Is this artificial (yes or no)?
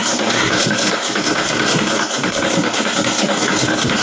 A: yes